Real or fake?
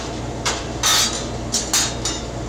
fake